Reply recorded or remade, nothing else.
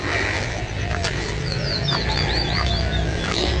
remade